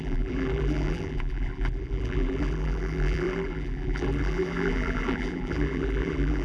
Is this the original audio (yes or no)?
no